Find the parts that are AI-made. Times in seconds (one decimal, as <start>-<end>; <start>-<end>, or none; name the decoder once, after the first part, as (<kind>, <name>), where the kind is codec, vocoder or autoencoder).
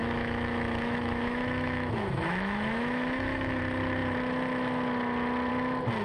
0.0-3.6 (autoencoder, DAC-VAE)